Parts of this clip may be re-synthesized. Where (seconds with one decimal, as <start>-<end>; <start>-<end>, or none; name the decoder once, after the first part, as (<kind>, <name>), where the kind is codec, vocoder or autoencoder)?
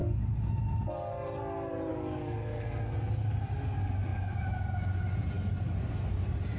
0.0-0.5 (codec, DAC); 1.9-2.6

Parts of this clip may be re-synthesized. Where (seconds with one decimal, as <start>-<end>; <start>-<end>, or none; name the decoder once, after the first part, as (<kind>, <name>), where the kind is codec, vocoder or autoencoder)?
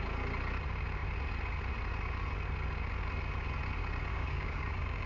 4.1-5.1 (codec, DAC)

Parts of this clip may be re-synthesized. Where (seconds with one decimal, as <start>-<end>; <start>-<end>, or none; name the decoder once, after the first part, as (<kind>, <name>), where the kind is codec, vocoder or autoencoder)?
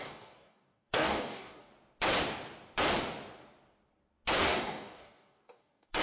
0.0-1.7 (codec, DAC); 4.4-6.0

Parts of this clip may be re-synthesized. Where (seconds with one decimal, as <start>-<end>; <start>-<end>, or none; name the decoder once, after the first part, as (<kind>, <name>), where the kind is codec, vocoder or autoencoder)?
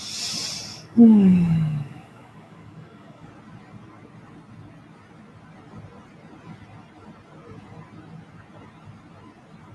0.7-3.3 (codec, DAC)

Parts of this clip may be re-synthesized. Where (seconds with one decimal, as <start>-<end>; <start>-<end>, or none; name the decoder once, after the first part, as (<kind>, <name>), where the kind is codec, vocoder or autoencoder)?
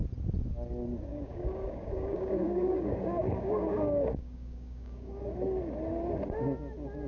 1.1-5.2 (codec, DAC)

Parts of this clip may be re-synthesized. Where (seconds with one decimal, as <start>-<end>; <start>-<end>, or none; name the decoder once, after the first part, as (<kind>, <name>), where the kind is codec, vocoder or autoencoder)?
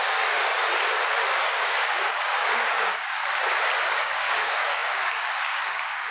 0.0-0.5 (codec, DAC); 1.1-3.2; 3.9-6.1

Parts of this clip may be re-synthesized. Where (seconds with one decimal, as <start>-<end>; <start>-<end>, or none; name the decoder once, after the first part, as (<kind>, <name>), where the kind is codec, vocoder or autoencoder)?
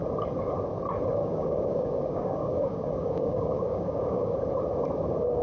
1.2-4.4 (codec, DAC)